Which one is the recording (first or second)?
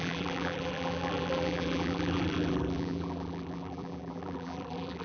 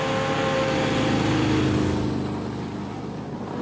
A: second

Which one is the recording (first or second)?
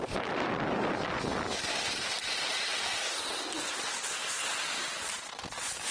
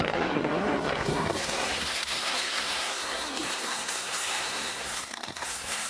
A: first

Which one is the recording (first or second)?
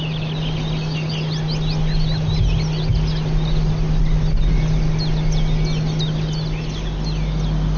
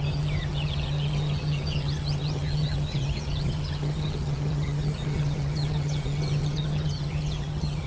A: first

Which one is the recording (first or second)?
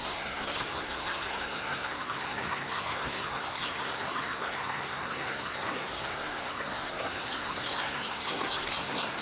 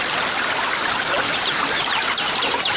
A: second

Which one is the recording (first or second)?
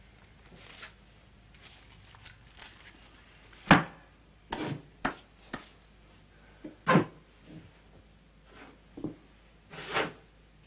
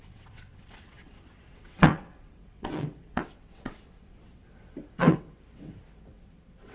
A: first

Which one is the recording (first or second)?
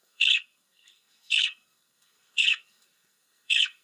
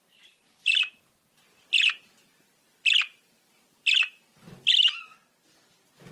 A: second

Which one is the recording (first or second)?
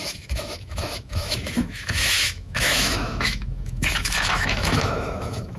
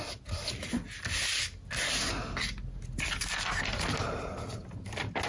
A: second